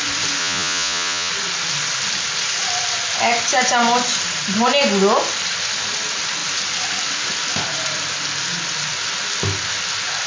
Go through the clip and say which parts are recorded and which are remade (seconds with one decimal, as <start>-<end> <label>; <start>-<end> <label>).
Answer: 0.0-0.4 recorded; 0.4-1.3 remade; 1.3-10.3 recorded